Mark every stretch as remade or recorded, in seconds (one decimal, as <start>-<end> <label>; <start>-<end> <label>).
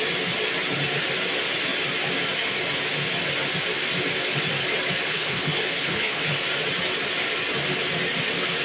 0.0-5.1 recorded; 5.1-6.3 remade; 6.3-8.6 recorded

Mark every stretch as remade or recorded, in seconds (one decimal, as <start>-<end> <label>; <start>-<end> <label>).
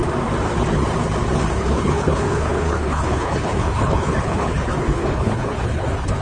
0.0-1.5 recorded; 1.5-6.2 remade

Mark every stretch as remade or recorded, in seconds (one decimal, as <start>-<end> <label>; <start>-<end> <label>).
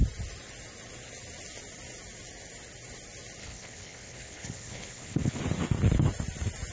0.0-3.4 recorded; 3.4-5.4 remade; 5.4-6.7 recorded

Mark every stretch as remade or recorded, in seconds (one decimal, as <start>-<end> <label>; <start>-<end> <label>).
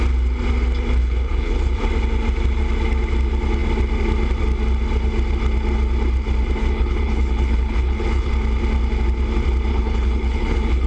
0.0-1.0 recorded; 1.0-1.8 remade; 1.8-6.6 recorded; 6.6-8.3 remade; 8.3-9.7 recorded; 9.7-10.9 remade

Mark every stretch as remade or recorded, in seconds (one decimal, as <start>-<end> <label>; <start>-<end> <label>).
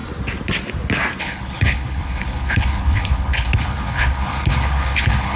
0.0-1.2 recorded; 1.2-5.4 remade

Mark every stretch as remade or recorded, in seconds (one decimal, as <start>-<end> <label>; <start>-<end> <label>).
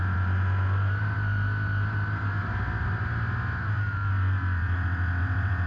0.0-5.7 recorded